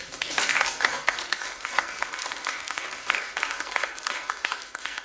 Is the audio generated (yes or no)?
yes